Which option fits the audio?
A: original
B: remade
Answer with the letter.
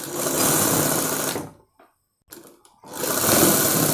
A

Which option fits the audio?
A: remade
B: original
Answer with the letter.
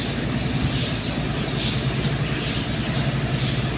B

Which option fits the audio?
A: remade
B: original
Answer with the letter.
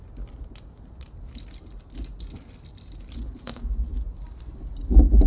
B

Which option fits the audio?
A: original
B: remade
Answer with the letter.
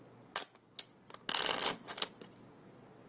A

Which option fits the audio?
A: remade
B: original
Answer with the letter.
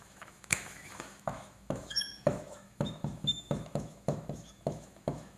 A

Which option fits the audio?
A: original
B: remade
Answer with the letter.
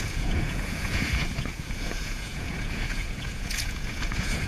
B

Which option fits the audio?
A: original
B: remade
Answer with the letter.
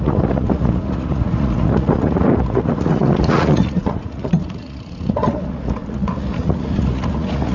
B